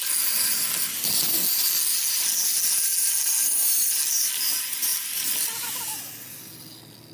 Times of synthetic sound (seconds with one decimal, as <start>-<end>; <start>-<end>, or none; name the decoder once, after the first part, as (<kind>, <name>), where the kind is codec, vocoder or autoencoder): none